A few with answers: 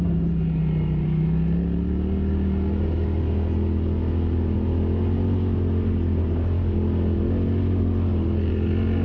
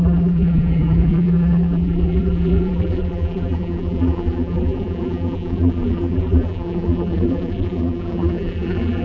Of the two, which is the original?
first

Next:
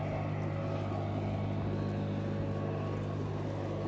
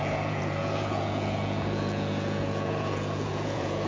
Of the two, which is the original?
first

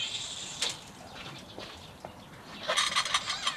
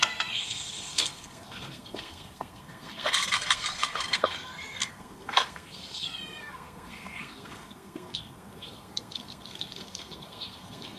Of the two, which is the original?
first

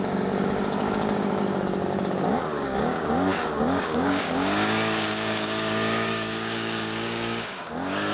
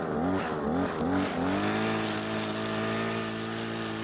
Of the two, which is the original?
second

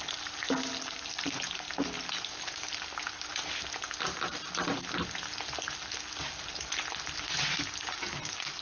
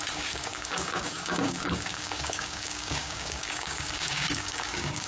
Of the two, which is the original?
first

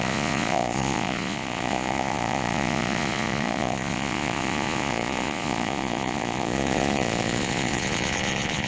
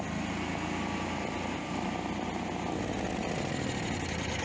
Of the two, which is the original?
second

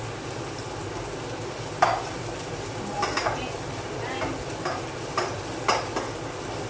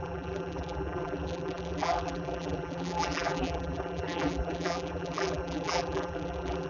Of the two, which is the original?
first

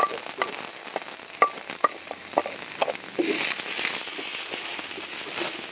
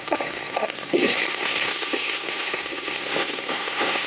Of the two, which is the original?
first